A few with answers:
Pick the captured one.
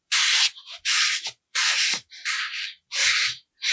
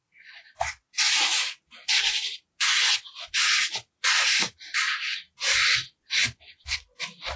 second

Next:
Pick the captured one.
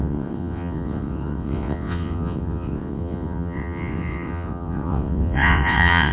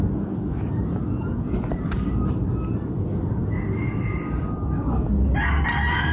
second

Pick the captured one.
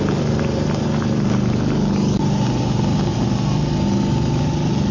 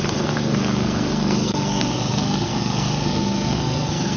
first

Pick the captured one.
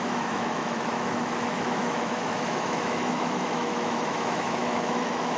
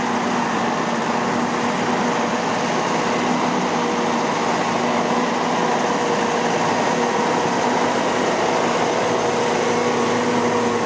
second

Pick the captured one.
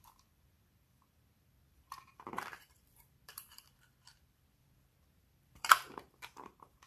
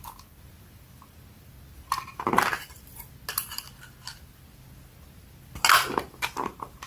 second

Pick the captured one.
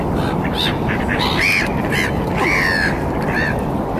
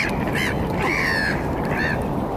first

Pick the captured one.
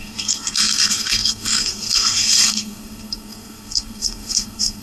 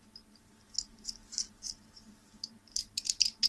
second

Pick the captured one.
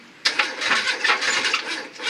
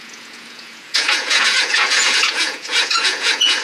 first